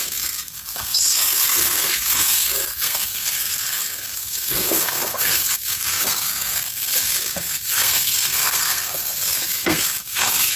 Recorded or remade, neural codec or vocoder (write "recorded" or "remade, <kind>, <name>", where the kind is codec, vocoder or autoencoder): remade, codec, SNAC